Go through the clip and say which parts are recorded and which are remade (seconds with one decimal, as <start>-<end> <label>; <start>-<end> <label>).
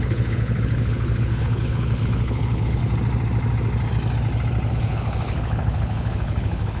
0.0-2.8 remade; 2.8-4.7 recorded; 4.7-6.8 remade